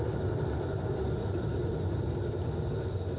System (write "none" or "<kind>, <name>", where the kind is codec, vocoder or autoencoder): none